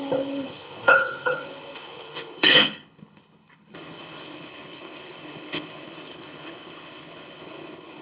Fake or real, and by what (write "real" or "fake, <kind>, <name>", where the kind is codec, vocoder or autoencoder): fake, codec, HILCodec